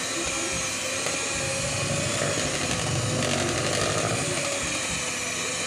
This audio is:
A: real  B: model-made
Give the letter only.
A